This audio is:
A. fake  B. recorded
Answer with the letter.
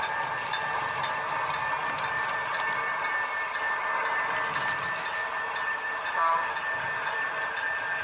B